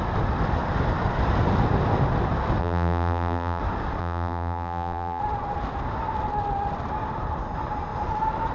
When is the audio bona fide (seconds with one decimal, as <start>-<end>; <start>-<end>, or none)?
0.0-2.6; 3.6-4.0; 5.2-8.5